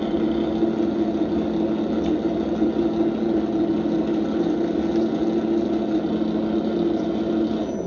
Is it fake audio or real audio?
real